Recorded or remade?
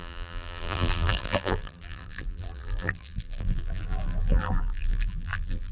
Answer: remade